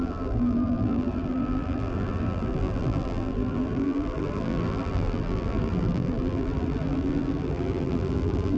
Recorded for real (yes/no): no